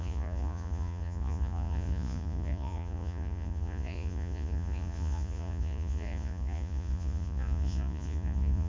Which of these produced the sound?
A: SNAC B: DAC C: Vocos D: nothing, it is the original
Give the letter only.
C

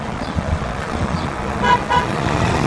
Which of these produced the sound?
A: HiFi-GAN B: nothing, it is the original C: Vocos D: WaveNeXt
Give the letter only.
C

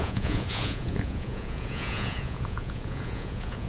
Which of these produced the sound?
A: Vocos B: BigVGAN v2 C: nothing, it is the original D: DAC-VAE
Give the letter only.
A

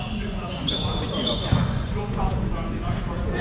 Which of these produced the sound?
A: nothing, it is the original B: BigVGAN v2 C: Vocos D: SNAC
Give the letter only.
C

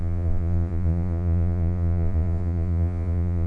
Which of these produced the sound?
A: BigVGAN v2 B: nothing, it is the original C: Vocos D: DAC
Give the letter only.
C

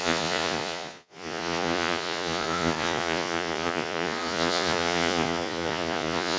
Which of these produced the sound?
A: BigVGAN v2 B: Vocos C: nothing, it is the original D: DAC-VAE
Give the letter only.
B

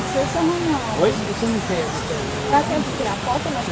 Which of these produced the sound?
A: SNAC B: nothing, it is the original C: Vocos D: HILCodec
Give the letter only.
B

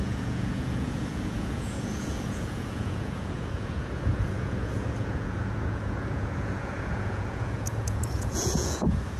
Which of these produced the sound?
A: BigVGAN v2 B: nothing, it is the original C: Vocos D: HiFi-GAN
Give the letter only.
C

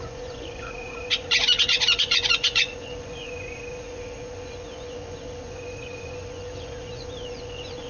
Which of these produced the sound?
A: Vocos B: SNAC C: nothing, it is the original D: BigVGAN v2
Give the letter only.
A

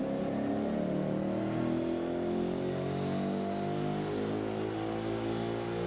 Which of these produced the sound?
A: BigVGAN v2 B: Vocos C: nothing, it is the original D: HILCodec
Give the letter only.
C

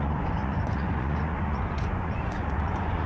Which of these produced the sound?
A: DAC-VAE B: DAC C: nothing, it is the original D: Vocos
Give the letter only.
D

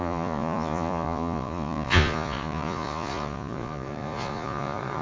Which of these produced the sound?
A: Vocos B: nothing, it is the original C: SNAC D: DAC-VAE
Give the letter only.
A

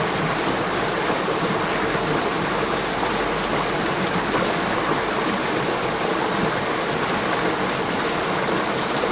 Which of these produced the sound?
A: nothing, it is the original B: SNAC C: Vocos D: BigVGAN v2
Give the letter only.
A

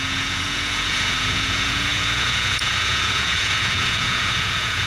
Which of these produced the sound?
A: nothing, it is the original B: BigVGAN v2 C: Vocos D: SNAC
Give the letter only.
C